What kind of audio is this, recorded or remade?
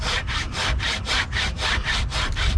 recorded